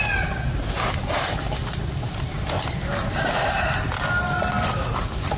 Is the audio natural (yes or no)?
yes